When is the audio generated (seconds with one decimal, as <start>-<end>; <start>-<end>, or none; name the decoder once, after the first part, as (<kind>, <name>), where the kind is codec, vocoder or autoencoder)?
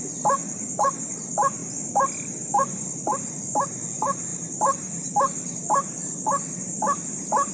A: 1.6-3.3 (vocoder, BigVGAN v2); 4.3-7.5